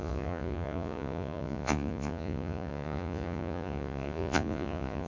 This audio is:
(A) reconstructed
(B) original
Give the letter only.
A